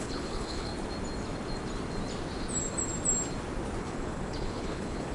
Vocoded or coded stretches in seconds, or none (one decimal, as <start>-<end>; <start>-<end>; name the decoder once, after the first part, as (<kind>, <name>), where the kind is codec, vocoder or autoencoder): 0.0-0.7 (codec, HILCodec); 3.8-5.1